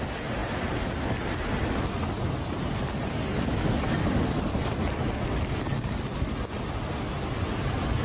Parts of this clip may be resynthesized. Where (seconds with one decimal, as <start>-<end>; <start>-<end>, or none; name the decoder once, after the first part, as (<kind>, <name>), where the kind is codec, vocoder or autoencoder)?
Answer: none